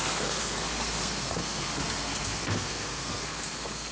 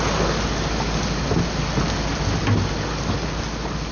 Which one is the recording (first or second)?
second